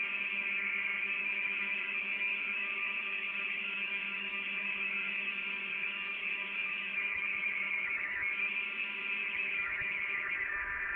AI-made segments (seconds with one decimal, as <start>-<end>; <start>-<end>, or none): 1.2-5.3; 5.7-8.5; 9.2-10.0